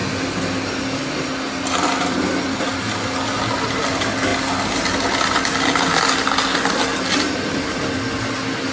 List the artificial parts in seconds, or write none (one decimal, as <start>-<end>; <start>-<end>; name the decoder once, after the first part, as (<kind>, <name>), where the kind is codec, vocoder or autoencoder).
none